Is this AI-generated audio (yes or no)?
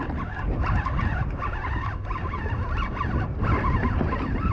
no